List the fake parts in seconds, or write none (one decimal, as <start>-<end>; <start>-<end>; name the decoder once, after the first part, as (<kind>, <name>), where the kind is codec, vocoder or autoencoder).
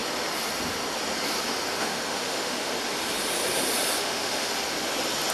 1.8-2.7 (autoencoder, DAC-VAE); 4.0-4.5